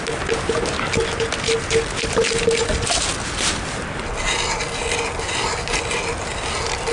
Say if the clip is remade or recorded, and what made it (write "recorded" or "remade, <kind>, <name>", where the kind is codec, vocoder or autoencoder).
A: recorded